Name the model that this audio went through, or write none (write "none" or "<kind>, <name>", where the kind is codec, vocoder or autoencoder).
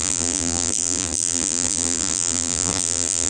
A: vocoder, BigVGAN v2